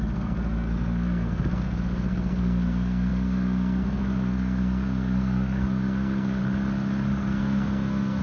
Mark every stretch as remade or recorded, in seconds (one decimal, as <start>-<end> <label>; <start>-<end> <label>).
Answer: 0.0-6.4 remade; 6.4-7.2 recorded; 7.2-8.2 remade